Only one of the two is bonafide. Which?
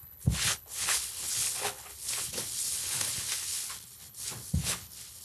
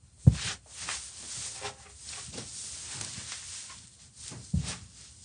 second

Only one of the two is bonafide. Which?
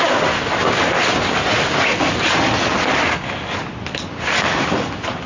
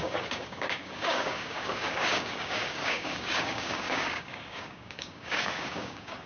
first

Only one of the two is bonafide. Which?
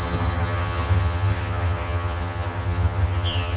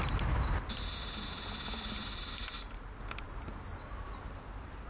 second